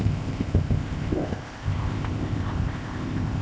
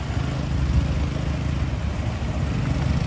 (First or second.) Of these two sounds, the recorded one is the second